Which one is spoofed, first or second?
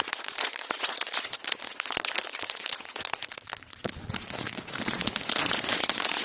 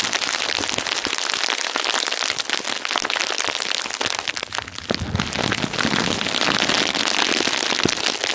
first